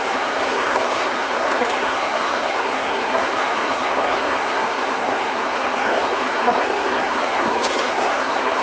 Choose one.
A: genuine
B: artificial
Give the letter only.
B